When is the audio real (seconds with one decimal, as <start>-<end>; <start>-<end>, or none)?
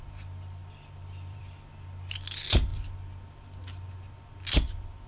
0.0-0.6; 1.7-5.1